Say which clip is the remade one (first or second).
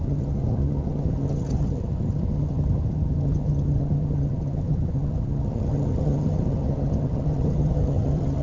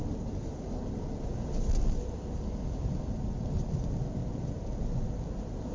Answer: first